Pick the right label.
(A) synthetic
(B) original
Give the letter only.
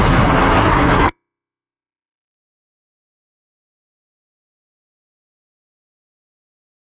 A